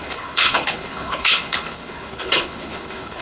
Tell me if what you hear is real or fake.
fake